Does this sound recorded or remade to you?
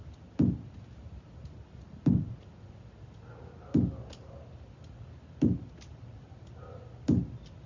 recorded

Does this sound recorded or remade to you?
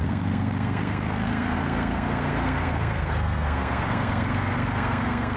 remade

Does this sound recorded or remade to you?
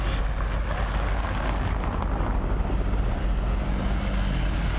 recorded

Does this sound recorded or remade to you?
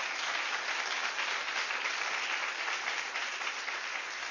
recorded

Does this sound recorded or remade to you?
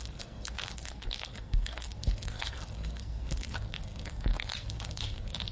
remade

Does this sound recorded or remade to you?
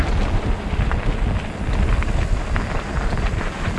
recorded